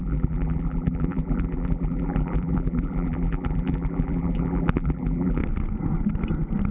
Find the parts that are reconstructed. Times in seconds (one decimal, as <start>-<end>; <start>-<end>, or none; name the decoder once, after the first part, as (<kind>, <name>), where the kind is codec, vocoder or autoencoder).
0.0-5.4 (vocoder, BigVGAN v2)